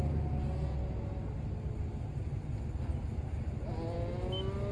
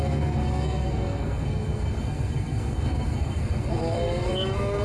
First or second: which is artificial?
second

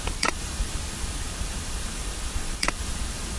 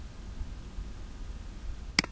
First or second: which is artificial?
first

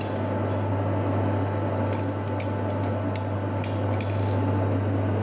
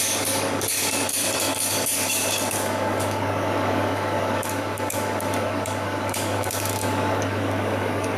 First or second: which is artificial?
second